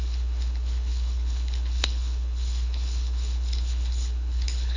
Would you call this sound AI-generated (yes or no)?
yes